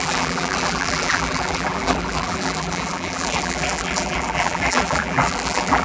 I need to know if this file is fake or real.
fake